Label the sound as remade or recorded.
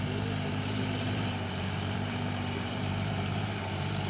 remade